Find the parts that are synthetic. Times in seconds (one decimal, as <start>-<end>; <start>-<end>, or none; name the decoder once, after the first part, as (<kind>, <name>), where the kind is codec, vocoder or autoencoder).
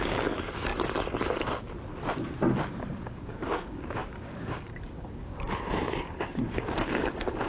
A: 0.0-0.7 (codec, DAC); 3.0-7.5